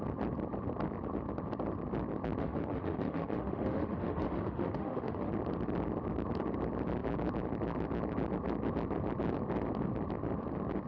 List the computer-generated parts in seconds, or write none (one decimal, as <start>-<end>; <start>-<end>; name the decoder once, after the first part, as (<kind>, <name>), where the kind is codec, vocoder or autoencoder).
2.4-5.3 (autoencoder, DAC-VAE)